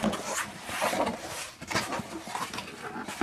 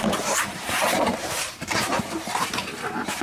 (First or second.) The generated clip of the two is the second